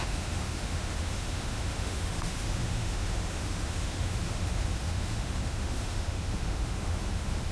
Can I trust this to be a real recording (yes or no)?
no